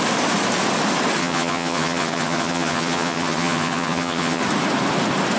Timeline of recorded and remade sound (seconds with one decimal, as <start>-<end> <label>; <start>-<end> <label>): 0.0-1.2 recorded; 1.2-4.4 remade; 4.4-5.4 recorded

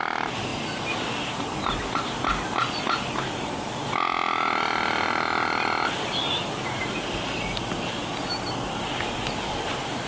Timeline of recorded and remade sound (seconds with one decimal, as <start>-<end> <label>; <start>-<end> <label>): 0.0-10.1 recorded

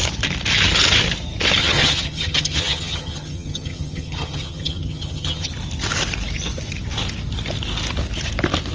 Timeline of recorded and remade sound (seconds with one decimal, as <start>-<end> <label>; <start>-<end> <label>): 0.0-1.6 recorded; 1.6-5.5 remade; 5.5-8.7 recorded

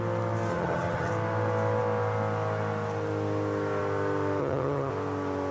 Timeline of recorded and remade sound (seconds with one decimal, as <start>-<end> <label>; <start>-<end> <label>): 0.0-0.5 recorded; 0.5-1.1 remade; 1.1-4.4 recorded; 4.4-4.9 remade; 4.9-5.5 recorded